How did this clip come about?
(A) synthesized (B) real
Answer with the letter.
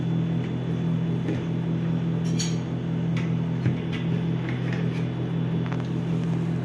B